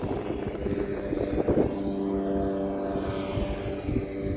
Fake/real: real